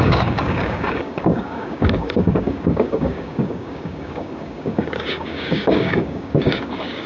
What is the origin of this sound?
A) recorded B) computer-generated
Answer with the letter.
B